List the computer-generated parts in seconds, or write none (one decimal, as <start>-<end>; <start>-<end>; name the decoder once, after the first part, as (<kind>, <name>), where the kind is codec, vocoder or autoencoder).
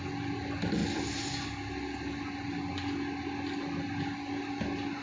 none